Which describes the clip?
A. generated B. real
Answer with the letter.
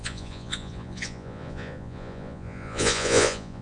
A